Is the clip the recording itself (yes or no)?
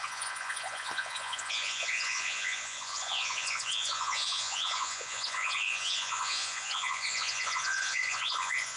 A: no